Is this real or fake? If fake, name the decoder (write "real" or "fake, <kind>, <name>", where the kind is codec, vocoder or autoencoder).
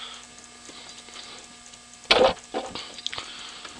real